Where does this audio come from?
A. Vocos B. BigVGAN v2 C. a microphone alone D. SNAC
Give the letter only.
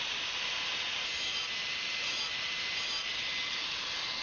C